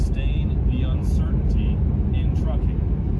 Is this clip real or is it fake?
real